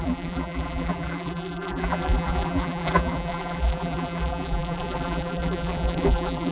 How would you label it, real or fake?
fake